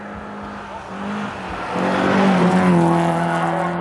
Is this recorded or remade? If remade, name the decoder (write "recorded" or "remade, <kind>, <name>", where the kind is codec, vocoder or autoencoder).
recorded